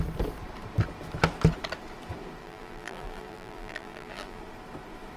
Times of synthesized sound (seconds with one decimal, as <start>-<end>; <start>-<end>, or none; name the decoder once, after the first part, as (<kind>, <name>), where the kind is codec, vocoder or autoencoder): 2.4-4.4 (vocoder, BigVGAN v2)